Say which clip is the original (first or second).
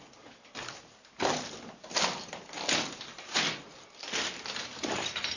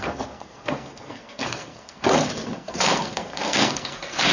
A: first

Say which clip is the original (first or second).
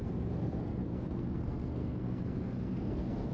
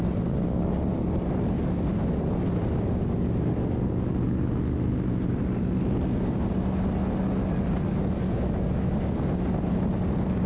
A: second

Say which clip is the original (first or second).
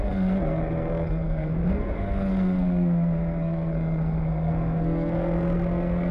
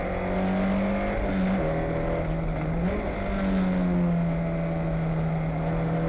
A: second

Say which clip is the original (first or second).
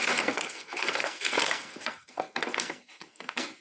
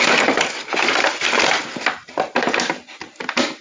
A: second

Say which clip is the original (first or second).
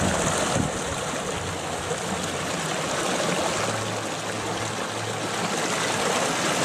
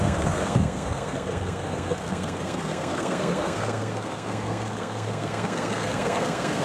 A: first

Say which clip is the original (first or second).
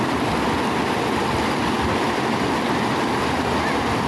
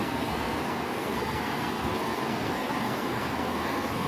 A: first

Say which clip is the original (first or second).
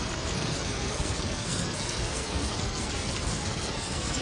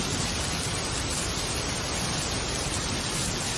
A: second